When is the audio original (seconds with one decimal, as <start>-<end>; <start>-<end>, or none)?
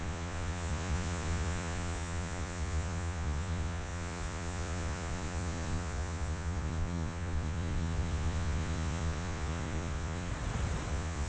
10.3-10.9